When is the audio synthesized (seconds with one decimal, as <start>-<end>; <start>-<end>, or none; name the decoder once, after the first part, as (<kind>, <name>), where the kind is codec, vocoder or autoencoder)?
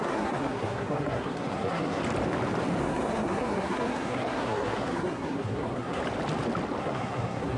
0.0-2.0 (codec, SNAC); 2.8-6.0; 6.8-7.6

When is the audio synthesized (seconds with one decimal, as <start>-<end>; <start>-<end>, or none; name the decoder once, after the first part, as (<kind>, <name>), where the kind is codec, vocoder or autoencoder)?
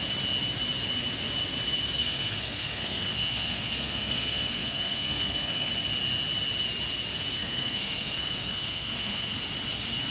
2.0-5.7 (codec, SNAC); 7.3-9.4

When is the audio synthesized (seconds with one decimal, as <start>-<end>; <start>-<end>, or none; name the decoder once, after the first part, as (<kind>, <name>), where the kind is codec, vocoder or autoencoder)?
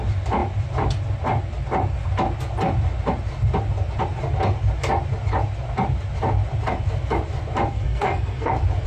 7.7-8.5 (codec, SNAC)